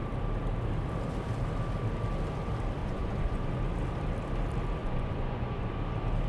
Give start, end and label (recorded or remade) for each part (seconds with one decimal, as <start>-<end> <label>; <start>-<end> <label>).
0.0-2.8 recorded; 2.8-3.5 remade; 3.5-4.8 recorded; 4.8-5.7 remade; 5.7-6.3 recorded